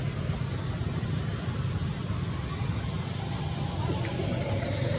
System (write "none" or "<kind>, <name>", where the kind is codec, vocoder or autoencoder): none